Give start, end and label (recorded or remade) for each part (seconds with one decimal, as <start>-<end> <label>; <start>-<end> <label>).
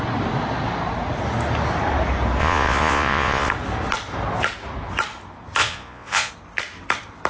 0.0-2.4 recorded; 2.4-3.5 remade; 3.5-5.6 recorded; 5.6-6.3 remade; 6.3-7.3 recorded